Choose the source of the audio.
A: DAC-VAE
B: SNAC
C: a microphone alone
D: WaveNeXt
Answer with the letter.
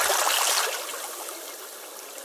C